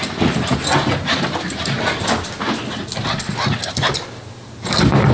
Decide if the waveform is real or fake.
real